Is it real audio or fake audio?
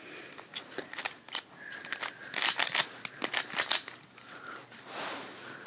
real